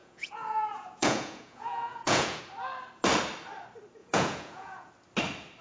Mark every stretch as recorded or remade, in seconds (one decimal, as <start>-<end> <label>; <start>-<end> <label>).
0.0-2.4 remade; 2.4-4.0 recorded; 4.0-4.9 remade; 4.9-5.6 recorded

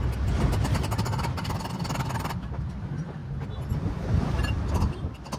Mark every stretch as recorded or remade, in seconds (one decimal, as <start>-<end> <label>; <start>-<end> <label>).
0.0-5.4 recorded

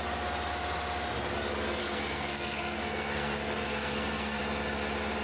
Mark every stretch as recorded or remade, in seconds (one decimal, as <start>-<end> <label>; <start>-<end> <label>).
0.0-1.8 recorded; 1.8-4.4 remade; 4.4-5.2 recorded